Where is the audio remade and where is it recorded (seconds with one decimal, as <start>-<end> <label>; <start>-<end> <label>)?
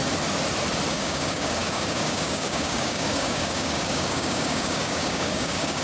0.0-0.9 recorded; 0.9-5.8 remade